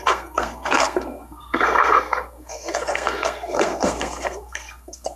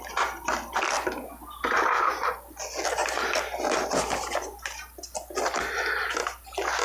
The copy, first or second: first